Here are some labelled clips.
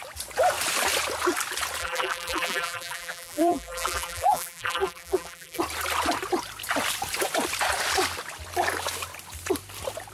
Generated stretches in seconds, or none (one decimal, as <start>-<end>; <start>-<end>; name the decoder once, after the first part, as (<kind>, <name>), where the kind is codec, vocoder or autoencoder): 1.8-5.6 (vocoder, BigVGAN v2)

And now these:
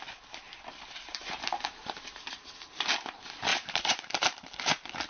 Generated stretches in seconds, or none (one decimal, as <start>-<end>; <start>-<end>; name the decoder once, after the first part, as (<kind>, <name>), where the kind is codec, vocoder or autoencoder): 1.1-2.9 (vocoder, BigVGAN v2); 3.5-5.1

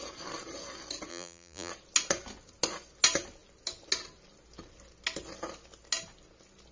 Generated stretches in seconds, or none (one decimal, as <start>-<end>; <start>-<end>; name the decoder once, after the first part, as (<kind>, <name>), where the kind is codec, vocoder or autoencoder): 1.1-1.7 (vocoder, BigVGAN v2)